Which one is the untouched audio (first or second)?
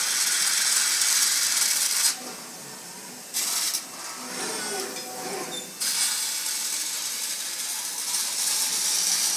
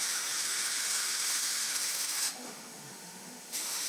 first